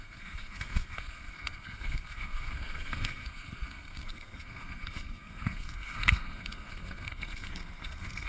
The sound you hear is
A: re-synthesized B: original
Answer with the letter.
A